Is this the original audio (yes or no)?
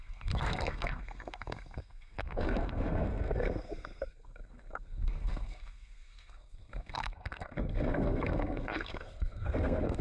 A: no